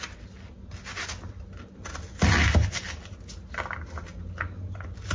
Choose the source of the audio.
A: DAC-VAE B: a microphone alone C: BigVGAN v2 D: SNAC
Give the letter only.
B